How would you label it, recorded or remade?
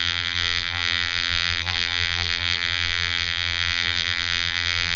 remade